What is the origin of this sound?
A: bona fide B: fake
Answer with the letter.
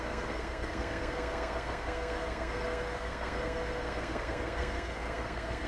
B